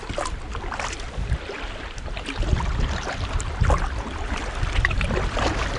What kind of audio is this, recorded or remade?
recorded